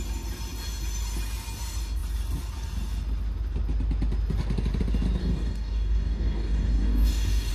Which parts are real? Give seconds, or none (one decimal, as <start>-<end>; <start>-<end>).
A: 0.0-5.2